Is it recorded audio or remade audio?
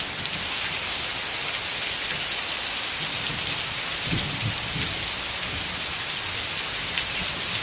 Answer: recorded